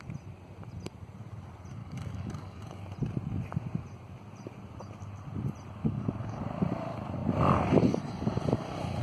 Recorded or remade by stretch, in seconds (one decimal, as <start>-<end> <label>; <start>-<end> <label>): 0.0-1.8 recorded; 1.8-2.8 remade; 2.8-5.8 recorded; 5.8-6.4 remade; 6.4-9.0 recorded